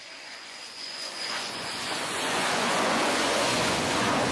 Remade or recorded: remade